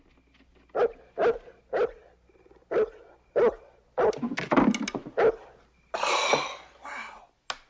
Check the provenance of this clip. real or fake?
real